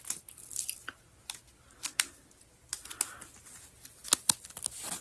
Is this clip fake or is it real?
real